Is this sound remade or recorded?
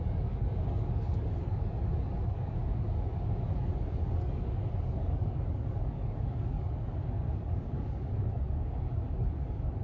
remade